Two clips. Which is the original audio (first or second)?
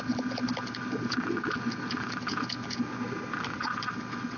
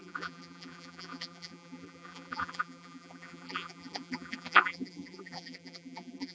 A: first